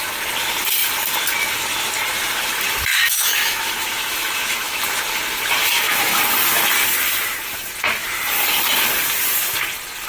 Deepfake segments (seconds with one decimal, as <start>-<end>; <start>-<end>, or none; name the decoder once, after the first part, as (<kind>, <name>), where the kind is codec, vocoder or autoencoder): 2.9-4.8 (autoencoder, DAC-VAE); 5.6-6.2